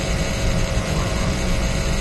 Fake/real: fake